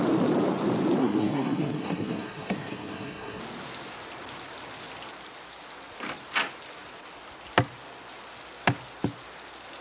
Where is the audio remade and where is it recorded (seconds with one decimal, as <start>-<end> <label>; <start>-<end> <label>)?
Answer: 0.0-1.0 recorded; 1.0-3.4 remade; 3.4-9.8 recorded

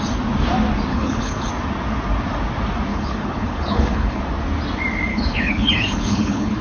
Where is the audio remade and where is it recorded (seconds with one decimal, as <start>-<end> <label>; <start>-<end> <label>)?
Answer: 0.0-0.9 recorded; 0.9-1.5 remade; 1.5-2.9 recorded; 2.9-4.2 remade; 4.2-5.1 recorded; 5.1-6.6 remade

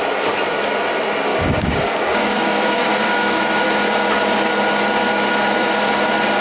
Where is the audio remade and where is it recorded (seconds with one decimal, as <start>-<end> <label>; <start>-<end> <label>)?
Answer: 0.0-1.3 recorded; 1.3-3.4 remade; 3.4-6.4 recorded